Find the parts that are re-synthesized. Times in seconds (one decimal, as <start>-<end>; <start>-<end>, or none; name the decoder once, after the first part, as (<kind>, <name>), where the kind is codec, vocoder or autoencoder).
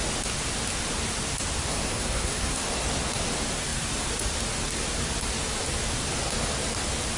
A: 1.7-2.7 (codec, SNAC)